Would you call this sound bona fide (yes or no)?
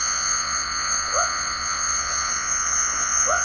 no